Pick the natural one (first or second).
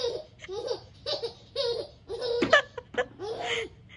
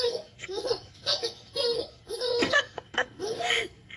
first